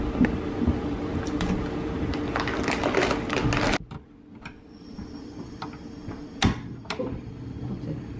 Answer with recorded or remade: recorded